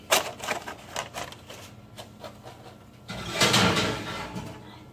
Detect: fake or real real